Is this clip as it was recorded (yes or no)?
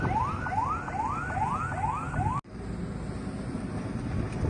yes